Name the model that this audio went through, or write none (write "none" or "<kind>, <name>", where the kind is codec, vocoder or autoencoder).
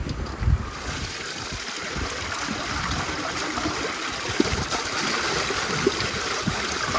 none